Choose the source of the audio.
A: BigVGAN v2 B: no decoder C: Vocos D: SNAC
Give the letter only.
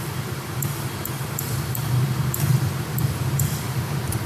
A